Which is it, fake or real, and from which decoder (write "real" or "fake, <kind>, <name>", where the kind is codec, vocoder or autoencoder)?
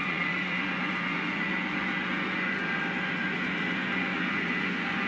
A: fake, vocoder, Vocos